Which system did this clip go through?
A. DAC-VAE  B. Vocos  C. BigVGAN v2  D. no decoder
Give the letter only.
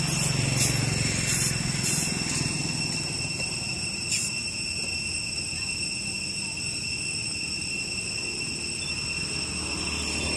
D